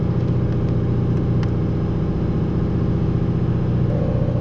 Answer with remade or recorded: recorded